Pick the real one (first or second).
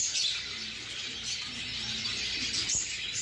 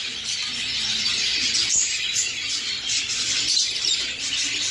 first